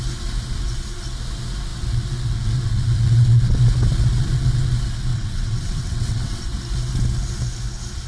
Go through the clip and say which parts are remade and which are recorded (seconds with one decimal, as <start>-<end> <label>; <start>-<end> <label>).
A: 0.0-5.1 recorded; 5.1-6.4 remade; 6.4-8.1 recorded